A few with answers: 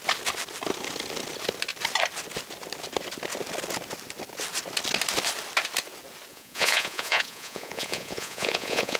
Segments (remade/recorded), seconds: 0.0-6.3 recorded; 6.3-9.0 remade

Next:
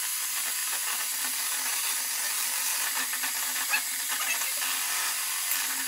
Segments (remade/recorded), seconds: 0.0-5.9 recorded